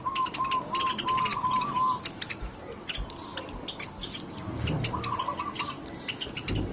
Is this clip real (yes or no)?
yes